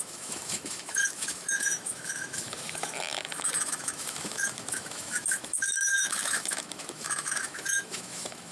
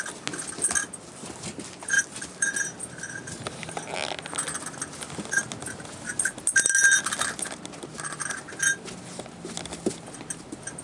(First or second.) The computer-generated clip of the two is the first